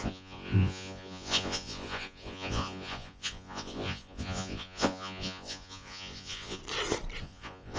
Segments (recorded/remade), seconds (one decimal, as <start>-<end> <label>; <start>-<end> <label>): 0.0-6.6 remade; 6.6-7.2 recorded; 7.2-7.8 remade